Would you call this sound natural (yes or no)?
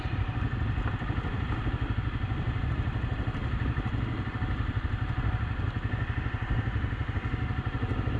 yes